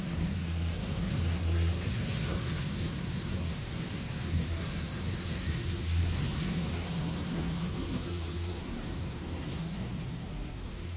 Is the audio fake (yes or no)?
yes